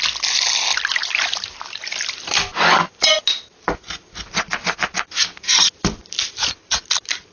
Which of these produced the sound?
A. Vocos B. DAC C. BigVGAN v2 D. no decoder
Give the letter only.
D